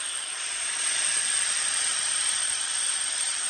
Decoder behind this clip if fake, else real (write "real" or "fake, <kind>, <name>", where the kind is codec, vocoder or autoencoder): fake, vocoder, Vocos